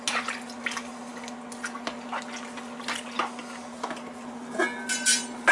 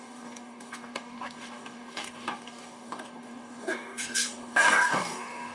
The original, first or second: first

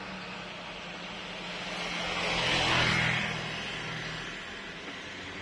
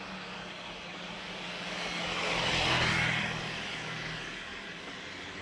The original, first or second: first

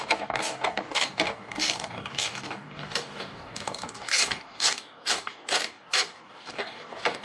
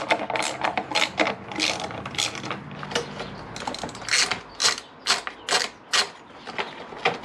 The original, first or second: second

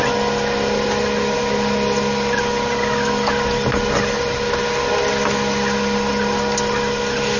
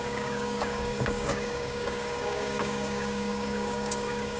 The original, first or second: first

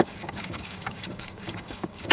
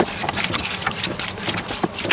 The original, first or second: second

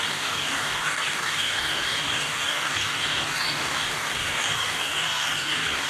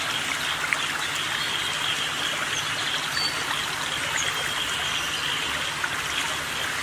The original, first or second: second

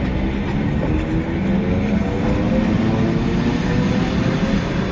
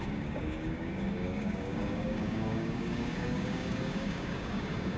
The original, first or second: first